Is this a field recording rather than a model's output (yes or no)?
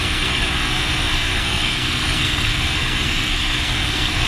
no